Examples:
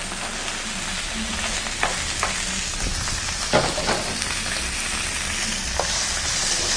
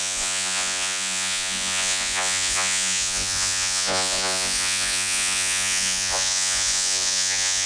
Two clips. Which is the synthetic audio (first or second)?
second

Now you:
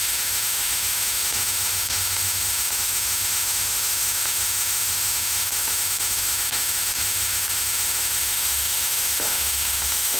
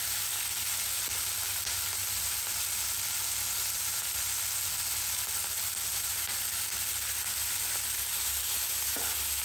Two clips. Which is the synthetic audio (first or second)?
first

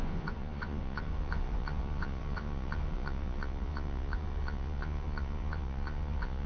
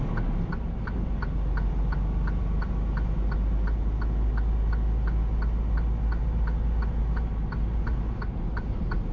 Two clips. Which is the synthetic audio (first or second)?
first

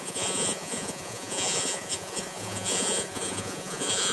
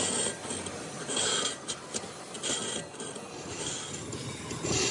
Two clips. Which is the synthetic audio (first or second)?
first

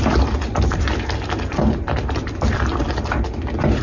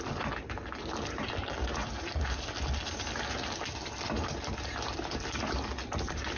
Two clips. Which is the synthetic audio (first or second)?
first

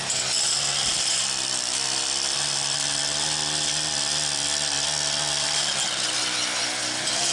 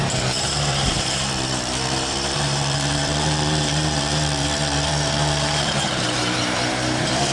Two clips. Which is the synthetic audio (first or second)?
second